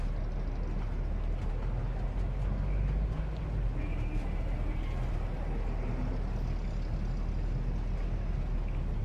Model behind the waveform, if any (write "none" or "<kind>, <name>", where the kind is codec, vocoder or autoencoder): none